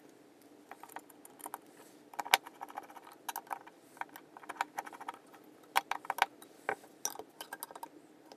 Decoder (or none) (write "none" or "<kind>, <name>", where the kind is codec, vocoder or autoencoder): none